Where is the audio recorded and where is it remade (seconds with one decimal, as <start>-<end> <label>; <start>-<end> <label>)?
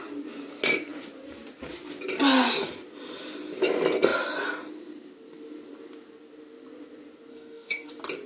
0.0-7.3 recorded; 7.3-7.9 remade; 7.9-8.3 recorded